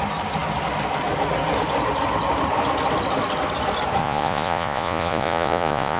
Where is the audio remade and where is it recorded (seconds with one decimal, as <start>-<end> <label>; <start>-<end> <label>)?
0.0-4.0 recorded; 4.0-6.0 remade

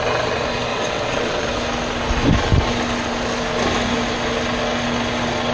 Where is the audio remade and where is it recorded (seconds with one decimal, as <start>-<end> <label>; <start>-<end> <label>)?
0.0-0.7 recorded; 0.7-1.4 remade; 1.4-5.5 recorded

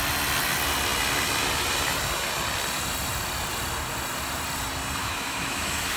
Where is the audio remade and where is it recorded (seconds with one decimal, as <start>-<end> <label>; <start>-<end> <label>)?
0.0-5.0 recorded; 5.0-6.0 remade